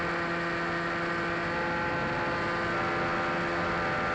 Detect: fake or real real